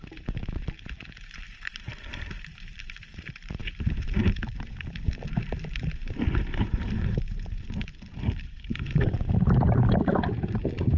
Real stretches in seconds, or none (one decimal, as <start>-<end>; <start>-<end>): none